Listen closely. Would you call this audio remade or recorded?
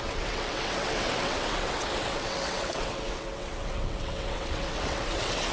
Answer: remade